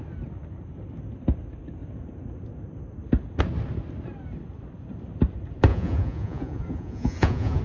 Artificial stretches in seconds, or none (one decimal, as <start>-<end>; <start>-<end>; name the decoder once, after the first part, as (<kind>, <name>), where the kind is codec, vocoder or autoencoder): 5.7-7.6 (vocoder, Vocos)